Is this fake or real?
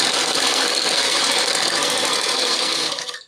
fake